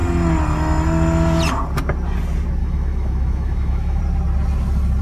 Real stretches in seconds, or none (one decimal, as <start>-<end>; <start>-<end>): 0.0-2.6; 4.0-5.0